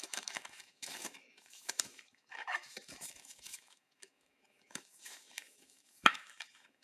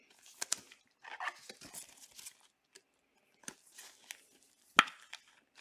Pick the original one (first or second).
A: second